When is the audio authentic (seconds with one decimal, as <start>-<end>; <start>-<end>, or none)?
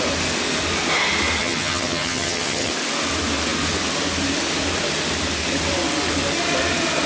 0.0-1.4; 2.7-7.1